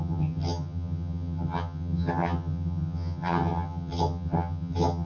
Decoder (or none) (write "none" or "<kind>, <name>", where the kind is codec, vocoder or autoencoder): vocoder, HiFi-GAN